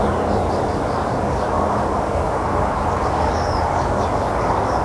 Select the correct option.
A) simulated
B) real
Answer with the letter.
A